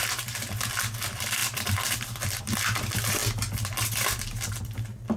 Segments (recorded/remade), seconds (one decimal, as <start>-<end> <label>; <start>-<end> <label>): 0.0-3.2 remade; 3.2-4.6 recorded; 4.6-5.2 remade